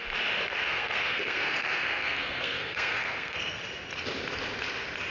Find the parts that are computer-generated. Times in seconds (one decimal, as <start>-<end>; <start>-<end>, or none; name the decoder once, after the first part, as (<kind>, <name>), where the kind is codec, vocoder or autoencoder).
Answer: 0.5-3.6 (codec, SNAC)